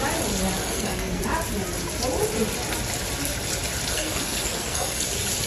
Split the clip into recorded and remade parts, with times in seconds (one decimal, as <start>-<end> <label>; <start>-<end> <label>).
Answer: 0.0-0.6 recorded; 0.6-1.2 remade; 1.2-3.9 recorded; 3.9-5.1 remade; 5.1-5.5 recorded